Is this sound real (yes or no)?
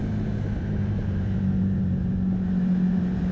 no